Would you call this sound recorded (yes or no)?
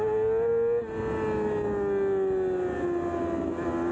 yes